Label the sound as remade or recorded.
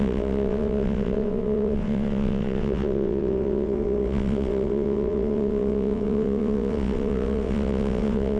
remade